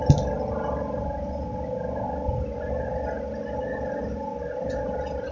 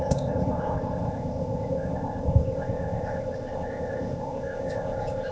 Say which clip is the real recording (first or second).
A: first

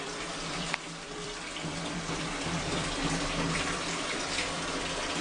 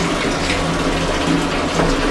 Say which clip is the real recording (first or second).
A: second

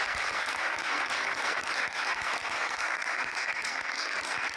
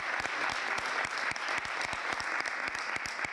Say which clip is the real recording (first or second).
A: second